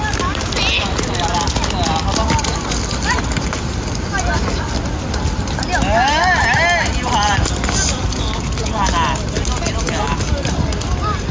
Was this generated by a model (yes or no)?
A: no